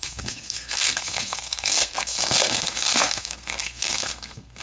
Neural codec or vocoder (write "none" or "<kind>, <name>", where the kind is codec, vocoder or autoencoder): codec, SNAC